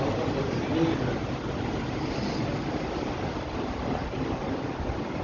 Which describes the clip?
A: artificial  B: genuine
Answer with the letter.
B